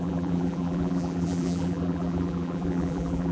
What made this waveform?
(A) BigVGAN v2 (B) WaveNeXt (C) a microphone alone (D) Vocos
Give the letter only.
A